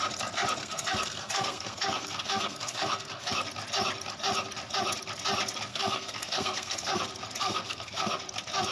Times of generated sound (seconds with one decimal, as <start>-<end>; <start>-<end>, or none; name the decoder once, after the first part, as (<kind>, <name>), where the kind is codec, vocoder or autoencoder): 0.6-3.3 (codec, SNAC); 5.7-7.0; 7.4-8.1